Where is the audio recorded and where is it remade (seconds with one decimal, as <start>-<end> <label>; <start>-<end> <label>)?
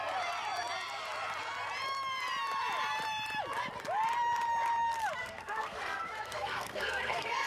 0.0-5.2 recorded; 5.2-7.5 remade